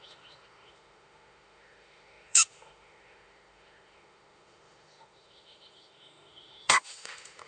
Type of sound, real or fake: fake